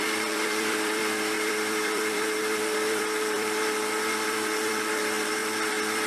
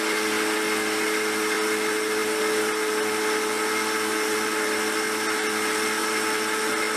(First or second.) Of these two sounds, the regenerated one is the first